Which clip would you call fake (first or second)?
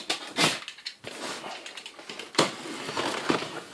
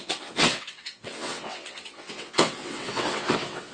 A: second